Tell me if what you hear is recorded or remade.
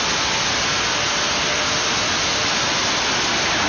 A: recorded